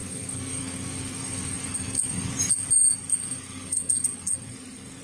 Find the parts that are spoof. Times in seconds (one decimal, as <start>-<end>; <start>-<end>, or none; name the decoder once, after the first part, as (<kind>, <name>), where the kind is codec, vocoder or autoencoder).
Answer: 0.0-2.3 (codec, SNAC); 3.2-5.0